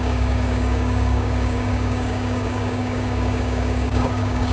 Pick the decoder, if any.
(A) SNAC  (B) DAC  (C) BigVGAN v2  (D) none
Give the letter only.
B